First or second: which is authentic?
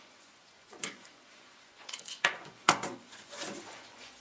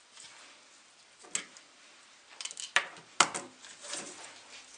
second